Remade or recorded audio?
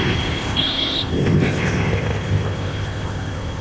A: remade